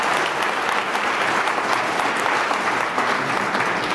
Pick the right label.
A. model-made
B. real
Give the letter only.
A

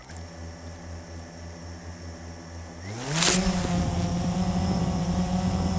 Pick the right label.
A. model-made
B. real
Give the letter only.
B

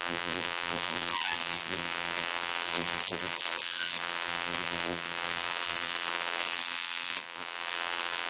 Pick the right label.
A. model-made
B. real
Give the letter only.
A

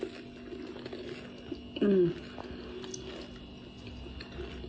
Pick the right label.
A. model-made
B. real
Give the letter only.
B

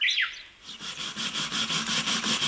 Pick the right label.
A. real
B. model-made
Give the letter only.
A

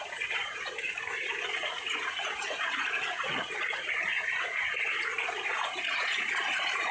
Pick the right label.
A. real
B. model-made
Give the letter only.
B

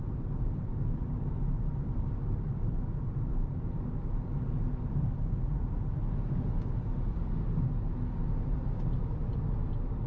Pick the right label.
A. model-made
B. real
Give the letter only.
B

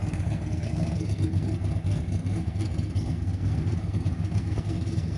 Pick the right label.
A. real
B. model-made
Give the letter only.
B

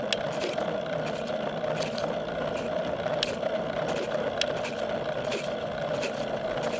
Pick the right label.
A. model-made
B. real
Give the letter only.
B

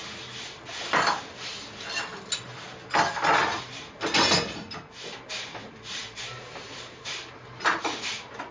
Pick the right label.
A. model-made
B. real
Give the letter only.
B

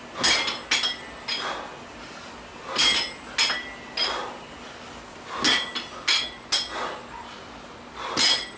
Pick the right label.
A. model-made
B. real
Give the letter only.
B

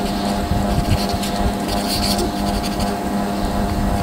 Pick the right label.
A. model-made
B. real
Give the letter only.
B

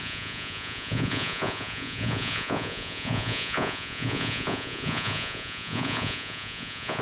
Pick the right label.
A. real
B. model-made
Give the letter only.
B